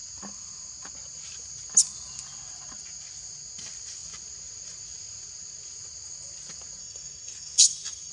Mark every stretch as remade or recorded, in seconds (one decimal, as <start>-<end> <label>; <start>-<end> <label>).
0.0-6.8 recorded; 6.8-8.1 remade